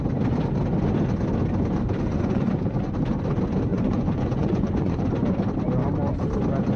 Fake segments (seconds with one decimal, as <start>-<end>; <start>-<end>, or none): 2.1-2.9; 3.7-5.0